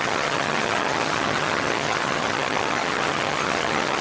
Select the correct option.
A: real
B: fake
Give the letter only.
B